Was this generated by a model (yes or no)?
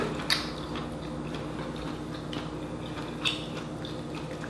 no